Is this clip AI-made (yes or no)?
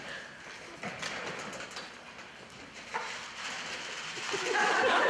no